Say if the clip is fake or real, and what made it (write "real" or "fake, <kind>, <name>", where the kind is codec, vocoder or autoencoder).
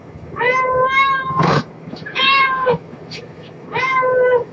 fake, autoencoder, DAC-VAE